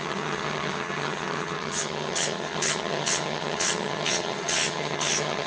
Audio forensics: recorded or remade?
remade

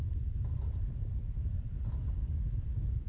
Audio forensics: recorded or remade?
recorded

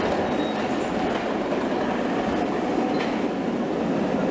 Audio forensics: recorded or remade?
recorded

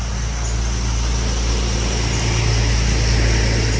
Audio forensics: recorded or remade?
recorded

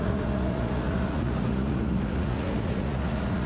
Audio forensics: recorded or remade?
remade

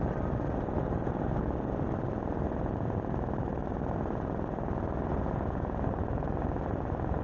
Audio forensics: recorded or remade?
remade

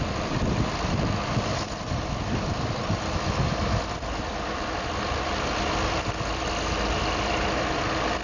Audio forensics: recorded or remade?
remade